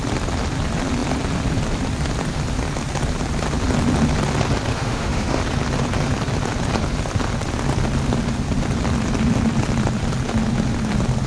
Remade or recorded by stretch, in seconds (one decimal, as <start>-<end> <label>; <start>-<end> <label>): 0.0-4.7 recorded; 4.7-5.4 remade; 5.4-11.3 recorded